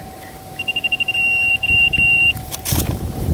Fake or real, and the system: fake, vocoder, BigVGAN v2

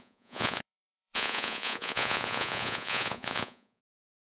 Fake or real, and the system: fake, vocoder, Vocos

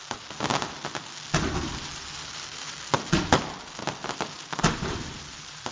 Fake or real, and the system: real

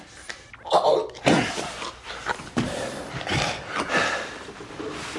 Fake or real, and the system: real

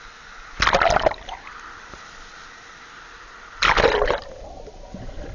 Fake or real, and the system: real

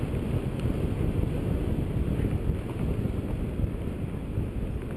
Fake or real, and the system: real